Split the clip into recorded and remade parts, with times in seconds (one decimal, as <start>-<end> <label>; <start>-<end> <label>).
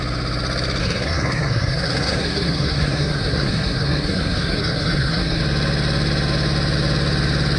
0.0-0.8 recorded; 0.8-5.4 remade; 5.4-7.6 recorded